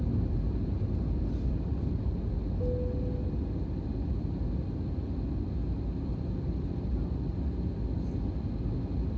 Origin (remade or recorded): recorded